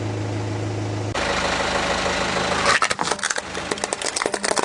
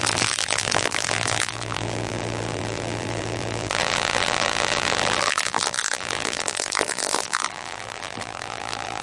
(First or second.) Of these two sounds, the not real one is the second